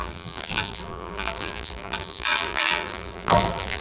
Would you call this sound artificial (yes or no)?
yes